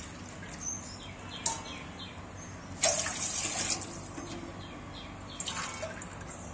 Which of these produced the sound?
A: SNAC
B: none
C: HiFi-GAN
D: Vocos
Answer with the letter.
B